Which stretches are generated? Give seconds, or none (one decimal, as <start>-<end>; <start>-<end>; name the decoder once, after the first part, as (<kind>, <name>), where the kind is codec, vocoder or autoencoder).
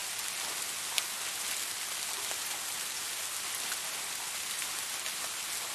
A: none